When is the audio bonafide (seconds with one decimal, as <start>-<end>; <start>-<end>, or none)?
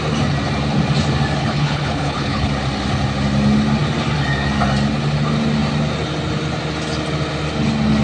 0.0-1.4; 2.5-8.0